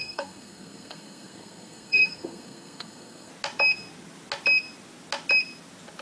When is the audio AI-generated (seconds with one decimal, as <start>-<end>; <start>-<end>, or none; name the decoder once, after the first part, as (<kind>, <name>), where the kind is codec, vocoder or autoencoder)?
0.0-3.3 (codec, SNAC)